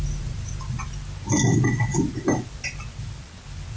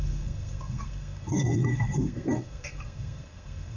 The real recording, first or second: first